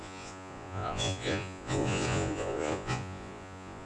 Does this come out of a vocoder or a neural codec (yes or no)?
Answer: yes